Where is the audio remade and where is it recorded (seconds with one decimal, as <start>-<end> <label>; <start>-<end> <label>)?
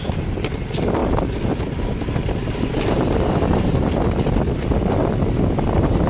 0.0-6.1 recorded